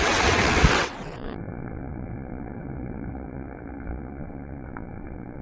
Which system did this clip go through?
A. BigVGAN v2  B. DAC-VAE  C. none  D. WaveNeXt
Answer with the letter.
D